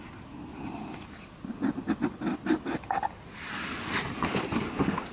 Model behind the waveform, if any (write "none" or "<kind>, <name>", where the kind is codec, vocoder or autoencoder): none